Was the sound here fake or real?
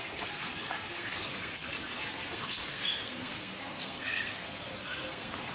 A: fake